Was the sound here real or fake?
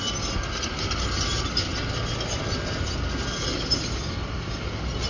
real